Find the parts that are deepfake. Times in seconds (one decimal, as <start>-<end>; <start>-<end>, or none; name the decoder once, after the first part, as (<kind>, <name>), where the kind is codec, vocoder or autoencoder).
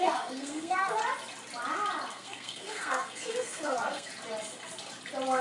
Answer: 0.0-1.0 (codec, SNAC); 2.1-4.1